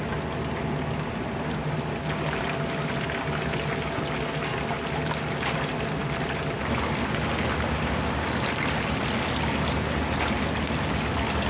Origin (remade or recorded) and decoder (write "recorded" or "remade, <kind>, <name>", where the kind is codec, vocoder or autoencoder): recorded